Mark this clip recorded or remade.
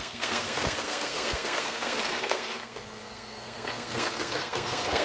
remade